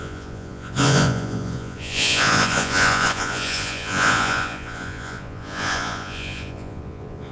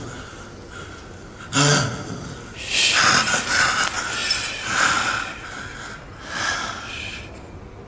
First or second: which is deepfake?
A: first